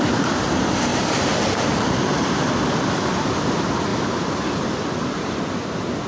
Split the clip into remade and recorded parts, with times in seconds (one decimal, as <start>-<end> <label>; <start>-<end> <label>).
0.0-6.1 recorded